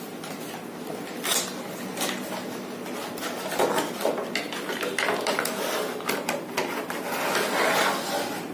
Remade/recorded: recorded